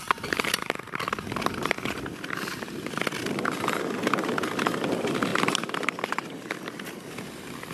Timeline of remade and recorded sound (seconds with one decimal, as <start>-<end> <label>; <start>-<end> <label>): 0.0-5.3 recorded; 5.3-5.9 remade; 5.9-7.7 recorded